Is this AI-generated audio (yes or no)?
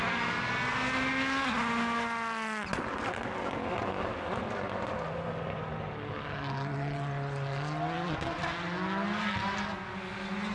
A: no